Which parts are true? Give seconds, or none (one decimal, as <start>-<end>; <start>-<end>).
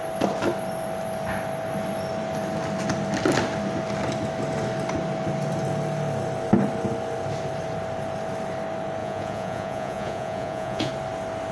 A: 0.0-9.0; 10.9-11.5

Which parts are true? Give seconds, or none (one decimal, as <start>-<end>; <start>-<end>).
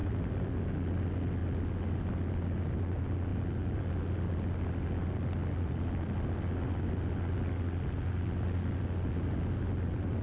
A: 0.0-10.2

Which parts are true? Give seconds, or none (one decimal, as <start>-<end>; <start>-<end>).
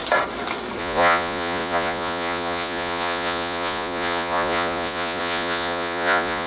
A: 0.0-0.8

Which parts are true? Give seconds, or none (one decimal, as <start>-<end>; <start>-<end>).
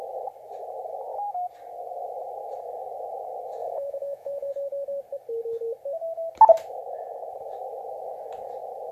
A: 0.0-3.6; 4.5-6.8; 7.3-8.9